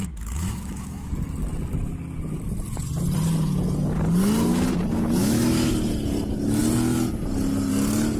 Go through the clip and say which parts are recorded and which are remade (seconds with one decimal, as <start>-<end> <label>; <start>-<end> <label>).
0.0-1.1 remade; 1.1-5.2 recorded; 5.2-5.7 remade; 5.7-8.2 recorded